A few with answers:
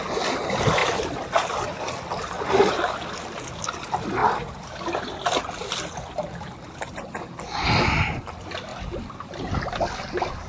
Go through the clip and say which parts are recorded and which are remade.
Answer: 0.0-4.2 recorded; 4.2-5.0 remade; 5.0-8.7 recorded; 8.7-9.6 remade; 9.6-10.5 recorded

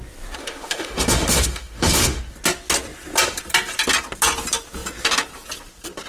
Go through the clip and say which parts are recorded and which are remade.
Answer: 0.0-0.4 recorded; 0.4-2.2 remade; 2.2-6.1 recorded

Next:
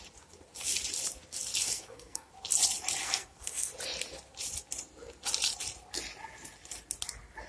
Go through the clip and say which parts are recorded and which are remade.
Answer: 0.0-1.6 recorded; 1.6-2.3 remade; 2.3-3.0 recorded; 3.0-3.7 remade; 3.7-7.5 recorded

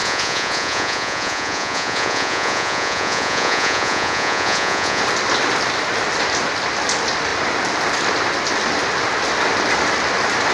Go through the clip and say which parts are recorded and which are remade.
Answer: 0.0-5.0 remade; 5.0-10.5 recorded